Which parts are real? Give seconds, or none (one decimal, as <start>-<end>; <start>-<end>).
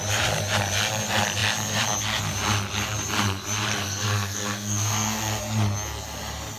0.0-3.7; 5.4-6.6